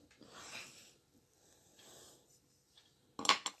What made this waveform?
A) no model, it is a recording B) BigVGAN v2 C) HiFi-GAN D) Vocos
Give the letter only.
A